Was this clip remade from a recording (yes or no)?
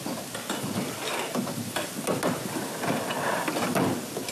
no